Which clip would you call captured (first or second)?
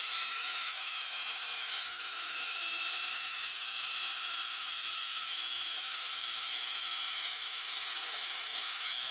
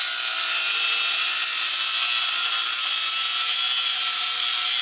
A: second